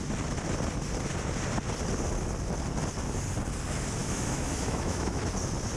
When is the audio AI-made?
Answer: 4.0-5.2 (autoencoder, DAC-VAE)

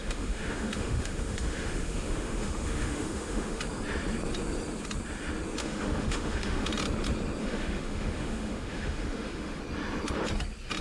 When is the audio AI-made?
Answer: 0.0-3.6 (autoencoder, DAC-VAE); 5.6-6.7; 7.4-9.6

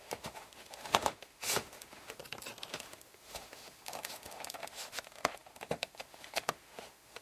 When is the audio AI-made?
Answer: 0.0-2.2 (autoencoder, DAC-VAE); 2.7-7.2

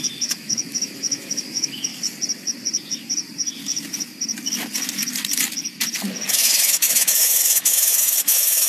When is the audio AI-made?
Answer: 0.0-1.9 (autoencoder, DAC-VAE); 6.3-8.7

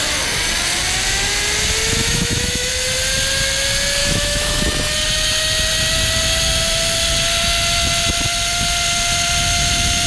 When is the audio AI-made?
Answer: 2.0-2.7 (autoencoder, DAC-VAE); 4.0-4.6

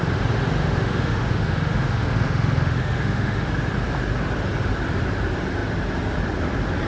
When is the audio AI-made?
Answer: 0.6-3.5 (autoencoder, DAC-VAE)

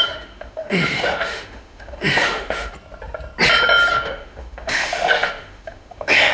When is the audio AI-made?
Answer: 0.0-2.7 (autoencoder, DAC-VAE); 3.9-6.3